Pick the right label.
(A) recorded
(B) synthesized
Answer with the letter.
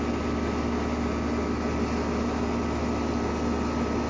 A